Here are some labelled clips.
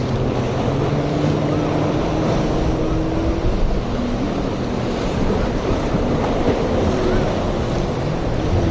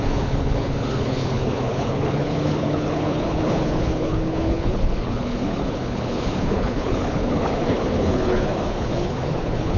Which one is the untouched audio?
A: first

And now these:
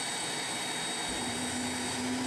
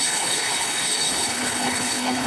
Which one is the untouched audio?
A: first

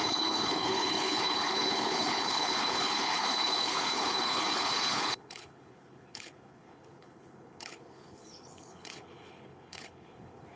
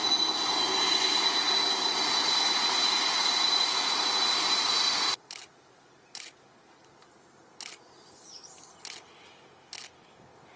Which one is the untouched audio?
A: second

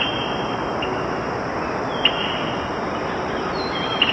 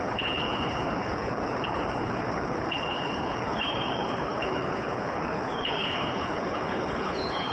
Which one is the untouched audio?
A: first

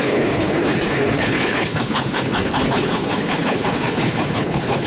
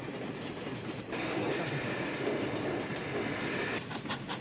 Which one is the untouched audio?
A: second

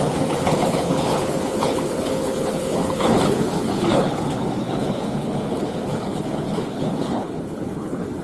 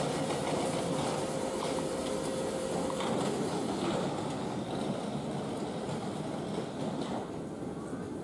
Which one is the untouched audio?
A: second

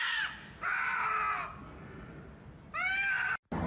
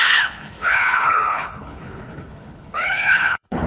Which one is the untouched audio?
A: first